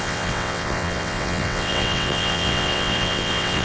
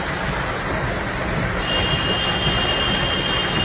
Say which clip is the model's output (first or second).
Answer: first